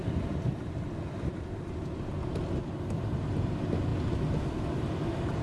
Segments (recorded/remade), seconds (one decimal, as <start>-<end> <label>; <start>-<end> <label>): 0.0-3.2 remade; 3.2-5.4 recorded